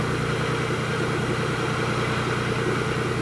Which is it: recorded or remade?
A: recorded